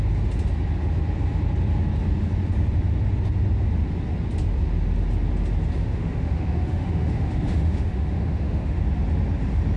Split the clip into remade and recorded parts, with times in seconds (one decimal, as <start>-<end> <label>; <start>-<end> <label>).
0.0-5.8 recorded; 5.8-8.8 remade; 8.8-9.8 recorded